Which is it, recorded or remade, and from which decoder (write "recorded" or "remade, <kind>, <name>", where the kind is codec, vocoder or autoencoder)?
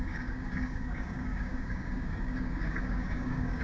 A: remade, codec, DAC